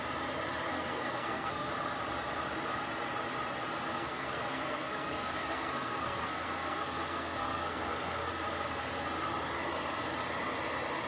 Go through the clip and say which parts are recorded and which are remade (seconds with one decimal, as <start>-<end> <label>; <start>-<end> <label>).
0.0-0.7 recorded; 0.7-1.7 remade; 1.7-3.9 recorded; 3.9-8.3 remade; 8.3-11.1 recorded